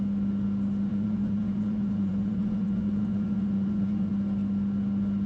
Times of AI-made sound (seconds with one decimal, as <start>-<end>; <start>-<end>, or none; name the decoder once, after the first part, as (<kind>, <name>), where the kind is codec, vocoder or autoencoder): 0.9-4.1 (vocoder, Vocos)